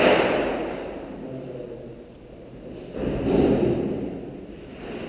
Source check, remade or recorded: recorded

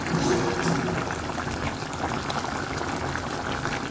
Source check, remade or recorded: recorded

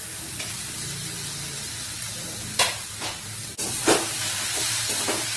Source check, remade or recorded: recorded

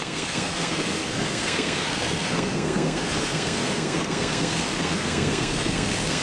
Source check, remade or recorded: remade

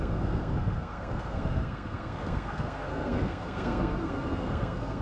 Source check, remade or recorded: remade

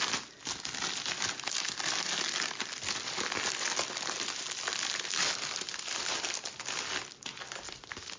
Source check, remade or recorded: recorded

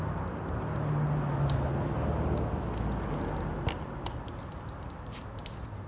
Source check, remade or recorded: recorded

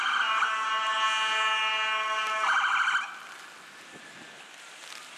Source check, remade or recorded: recorded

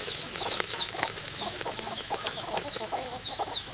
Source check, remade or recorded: remade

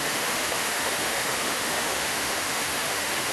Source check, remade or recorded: remade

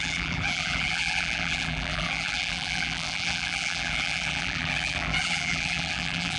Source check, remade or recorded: remade